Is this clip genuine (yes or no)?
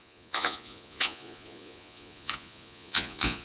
no